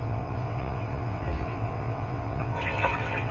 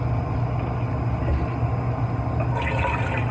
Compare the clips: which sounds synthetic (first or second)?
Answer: first